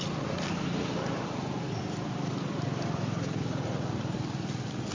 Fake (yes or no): yes